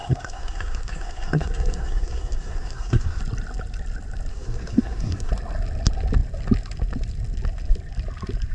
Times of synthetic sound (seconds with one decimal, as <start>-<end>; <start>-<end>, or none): 0.0-3.2; 4.3-5.3